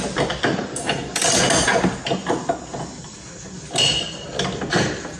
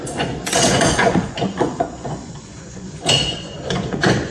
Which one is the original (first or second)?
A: first